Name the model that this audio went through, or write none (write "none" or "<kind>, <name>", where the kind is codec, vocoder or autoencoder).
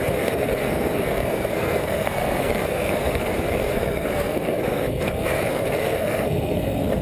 codec, SNAC